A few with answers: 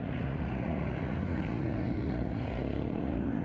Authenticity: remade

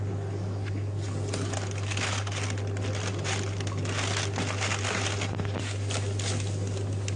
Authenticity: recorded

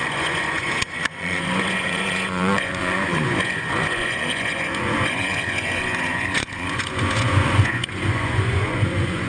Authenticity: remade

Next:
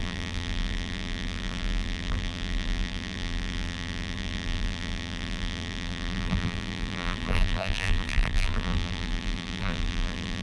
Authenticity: remade